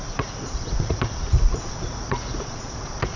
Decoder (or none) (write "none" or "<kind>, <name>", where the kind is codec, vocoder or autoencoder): vocoder, Vocos